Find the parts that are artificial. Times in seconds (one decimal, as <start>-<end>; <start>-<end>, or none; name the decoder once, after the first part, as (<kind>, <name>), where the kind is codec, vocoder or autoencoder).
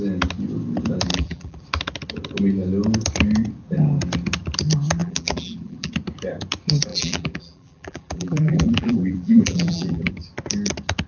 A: 1.1-1.6 (vocoder, BigVGAN v2); 5.0-5.9; 6.9-10.1